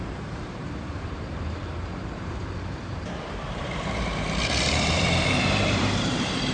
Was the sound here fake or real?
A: fake